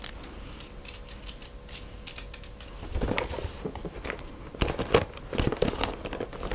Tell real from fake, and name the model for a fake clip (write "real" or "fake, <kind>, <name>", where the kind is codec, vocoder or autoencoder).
real